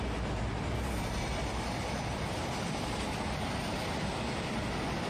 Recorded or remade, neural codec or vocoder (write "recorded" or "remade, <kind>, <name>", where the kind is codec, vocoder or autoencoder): recorded